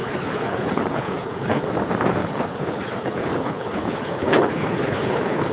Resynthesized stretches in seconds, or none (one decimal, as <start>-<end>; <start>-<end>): 0.0-1.7; 2.2-5.5